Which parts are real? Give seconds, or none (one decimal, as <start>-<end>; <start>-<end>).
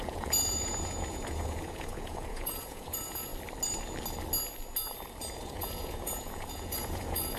3.3-5.3